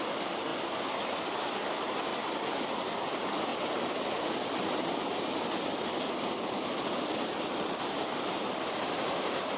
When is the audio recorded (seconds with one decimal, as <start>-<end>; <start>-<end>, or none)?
0.0-2.1; 2.7-3.5; 7.8-9.6